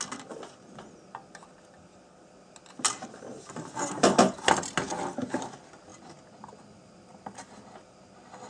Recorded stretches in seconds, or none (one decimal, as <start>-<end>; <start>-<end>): 0.0-8.5